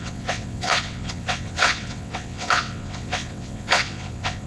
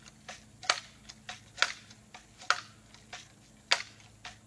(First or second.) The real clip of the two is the second